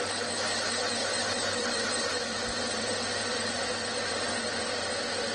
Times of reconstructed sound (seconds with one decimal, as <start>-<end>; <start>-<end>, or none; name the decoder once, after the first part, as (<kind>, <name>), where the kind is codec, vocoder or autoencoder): 1.0-3.7 (vocoder, BigVGAN v2)